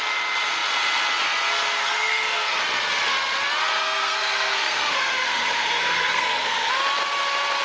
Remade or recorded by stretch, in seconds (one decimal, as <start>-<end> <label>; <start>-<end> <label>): 0.0-1.8 recorded; 1.8-2.6 remade; 2.6-3.8 recorded; 3.8-6.7 remade; 6.7-7.6 recorded